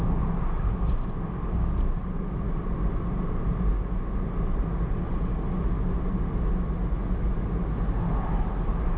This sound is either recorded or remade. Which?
recorded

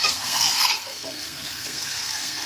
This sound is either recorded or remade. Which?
remade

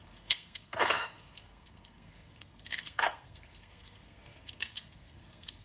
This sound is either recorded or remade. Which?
remade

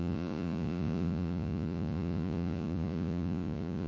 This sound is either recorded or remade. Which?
remade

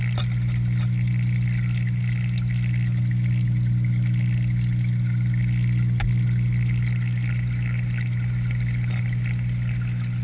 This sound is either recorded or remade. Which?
recorded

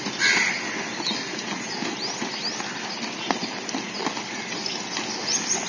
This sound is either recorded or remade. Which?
recorded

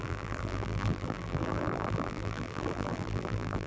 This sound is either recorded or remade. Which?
remade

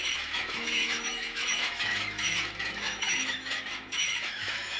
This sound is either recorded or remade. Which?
remade